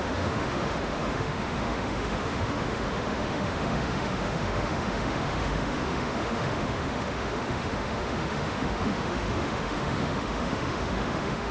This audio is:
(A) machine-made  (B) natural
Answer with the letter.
A